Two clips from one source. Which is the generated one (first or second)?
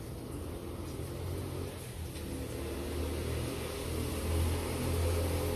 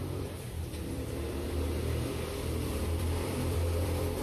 second